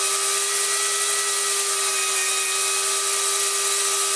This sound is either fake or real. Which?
real